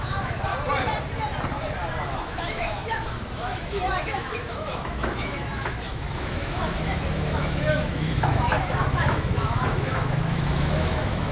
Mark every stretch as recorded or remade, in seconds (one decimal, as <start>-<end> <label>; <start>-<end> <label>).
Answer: 0.0-0.5 remade; 0.5-2.0 recorded; 2.0-11.3 remade